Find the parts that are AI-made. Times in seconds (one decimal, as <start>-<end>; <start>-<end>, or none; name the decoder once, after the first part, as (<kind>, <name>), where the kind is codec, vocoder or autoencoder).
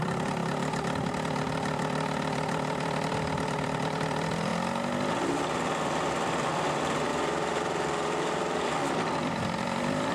0.0-0.4 (vocoder, BigVGAN v2); 1.1-4.5; 6.3-10.1